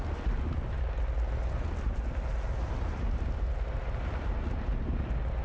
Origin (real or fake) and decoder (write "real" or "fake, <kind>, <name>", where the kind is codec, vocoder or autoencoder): real